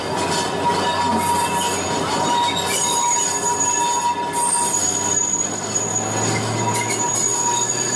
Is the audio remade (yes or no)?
no